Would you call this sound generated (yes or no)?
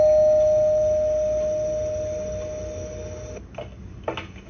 no